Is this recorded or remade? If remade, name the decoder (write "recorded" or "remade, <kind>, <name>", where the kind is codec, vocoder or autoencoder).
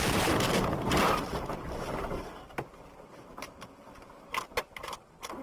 remade, vocoder, BigVGAN v2